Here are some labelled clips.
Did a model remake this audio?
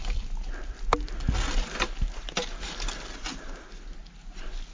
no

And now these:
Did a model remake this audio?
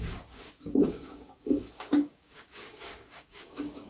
yes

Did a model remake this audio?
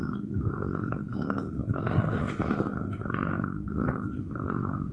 yes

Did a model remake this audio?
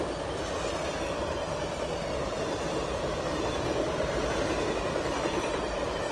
no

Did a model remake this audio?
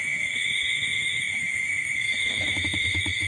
yes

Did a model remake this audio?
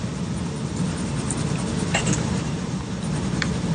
yes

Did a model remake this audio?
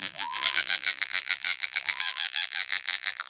yes